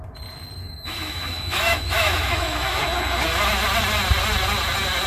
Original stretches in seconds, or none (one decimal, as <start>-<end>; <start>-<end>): 0.0-0.6; 2.8-5.1